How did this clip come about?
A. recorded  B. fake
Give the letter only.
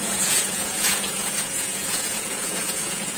B